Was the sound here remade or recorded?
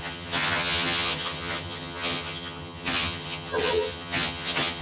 remade